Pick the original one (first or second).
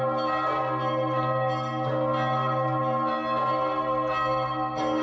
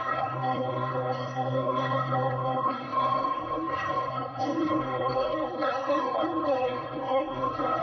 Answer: first